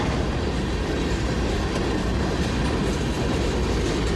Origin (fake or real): real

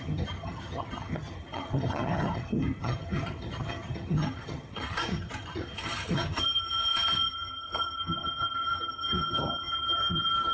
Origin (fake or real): fake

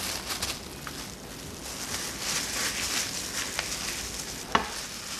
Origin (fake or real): real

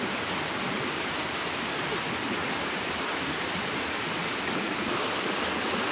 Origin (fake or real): real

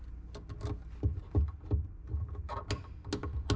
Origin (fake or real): real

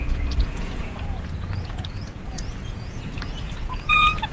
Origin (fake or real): fake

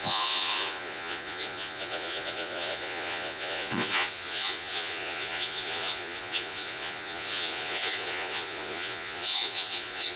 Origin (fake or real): fake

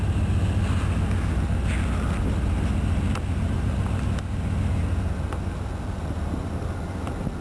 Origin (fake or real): real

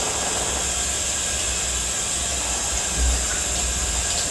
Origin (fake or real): real